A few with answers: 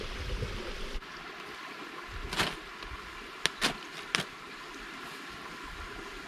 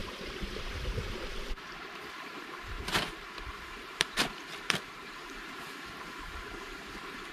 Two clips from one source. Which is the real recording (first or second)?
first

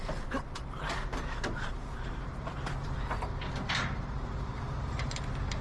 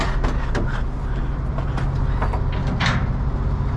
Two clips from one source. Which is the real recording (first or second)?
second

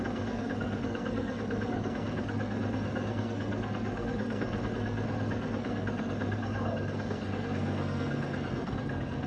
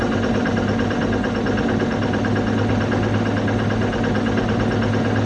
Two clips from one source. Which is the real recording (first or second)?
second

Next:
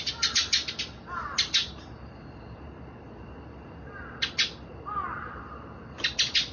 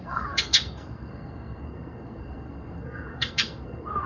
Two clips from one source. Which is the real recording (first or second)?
first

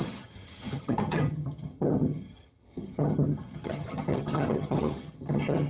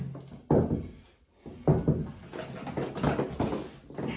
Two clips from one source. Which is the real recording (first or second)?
second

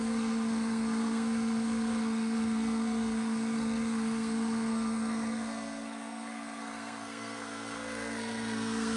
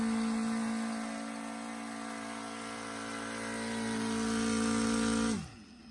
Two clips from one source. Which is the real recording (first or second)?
second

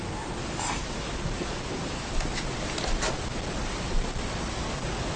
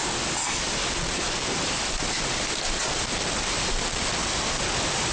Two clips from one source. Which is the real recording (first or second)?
first